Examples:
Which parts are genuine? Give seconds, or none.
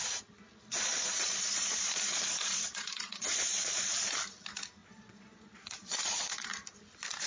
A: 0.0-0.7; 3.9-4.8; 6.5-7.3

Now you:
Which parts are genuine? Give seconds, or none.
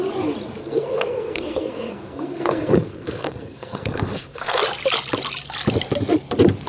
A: 0.0-0.6; 4.6-6.7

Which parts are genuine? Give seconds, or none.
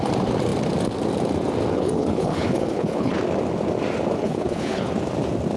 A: 0.0-1.7; 3.2-4.2; 4.9-5.6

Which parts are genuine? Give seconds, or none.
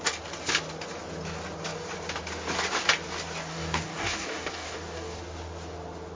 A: 0.0-3.5; 5.2-6.1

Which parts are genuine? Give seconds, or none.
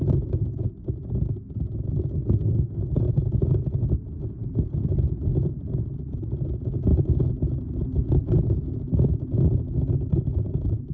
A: 0.0-2.1; 2.8-10.9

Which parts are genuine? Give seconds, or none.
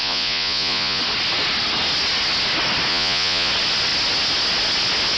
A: 1.0-2.9; 3.5-5.2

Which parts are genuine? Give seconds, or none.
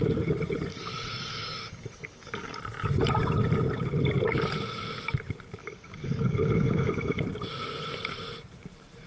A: 0.0-0.7; 2.6-5.6; 7.2-9.1